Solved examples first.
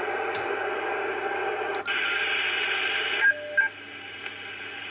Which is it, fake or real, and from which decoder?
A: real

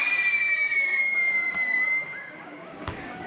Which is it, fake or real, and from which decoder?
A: fake, codec, DAC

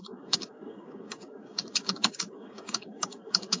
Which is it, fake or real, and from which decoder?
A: fake, codec, DAC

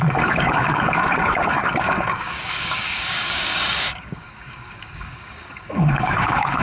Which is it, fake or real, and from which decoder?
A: fake, codec, DAC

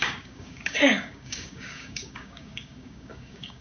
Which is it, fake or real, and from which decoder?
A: fake, codec, DAC